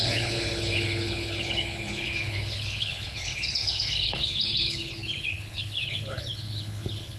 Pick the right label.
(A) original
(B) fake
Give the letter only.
B